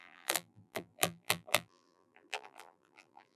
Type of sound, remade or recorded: remade